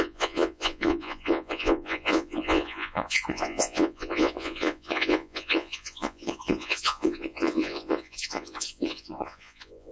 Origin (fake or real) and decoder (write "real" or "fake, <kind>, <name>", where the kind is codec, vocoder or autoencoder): fake, vocoder, Vocos